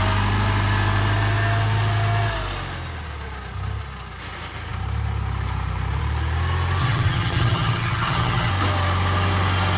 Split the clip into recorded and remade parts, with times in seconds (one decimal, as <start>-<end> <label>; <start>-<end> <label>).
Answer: 0.0-6.8 recorded; 6.8-8.5 remade; 8.5-9.8 recorded